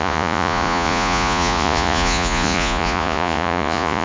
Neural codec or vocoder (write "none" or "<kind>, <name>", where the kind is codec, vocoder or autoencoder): vocoder, Vocos